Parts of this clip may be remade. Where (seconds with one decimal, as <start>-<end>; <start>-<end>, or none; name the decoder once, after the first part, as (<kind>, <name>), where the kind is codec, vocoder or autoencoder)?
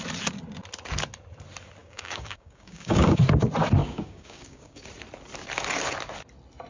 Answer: 1.8-3.2 (codec, DAC); 3.8-4.9